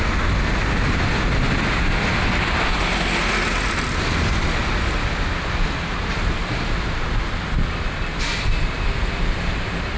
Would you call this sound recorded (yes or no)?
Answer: yes